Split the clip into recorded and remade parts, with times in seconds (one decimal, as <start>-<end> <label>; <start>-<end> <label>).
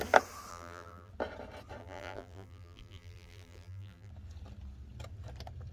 0.0-0.5 recorded; 0.5-1.1 remade; 1.1-1.8 recorded; 1.8-4.1 remade; 4.1-5.7 recorded